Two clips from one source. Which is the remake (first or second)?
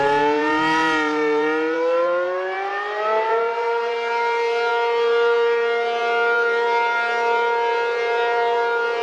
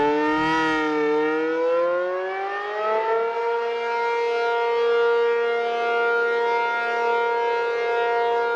first